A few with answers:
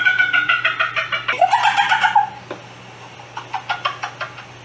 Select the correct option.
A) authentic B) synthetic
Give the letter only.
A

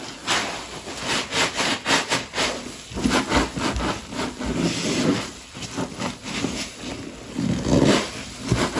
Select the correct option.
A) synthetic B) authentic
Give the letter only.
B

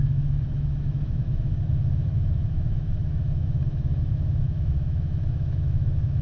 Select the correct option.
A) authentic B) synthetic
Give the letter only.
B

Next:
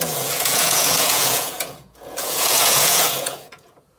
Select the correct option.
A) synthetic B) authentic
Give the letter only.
A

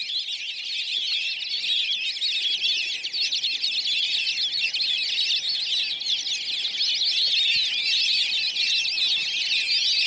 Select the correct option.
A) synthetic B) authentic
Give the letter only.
B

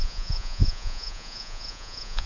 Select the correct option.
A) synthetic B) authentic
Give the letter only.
A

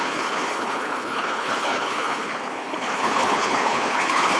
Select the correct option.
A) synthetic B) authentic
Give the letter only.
A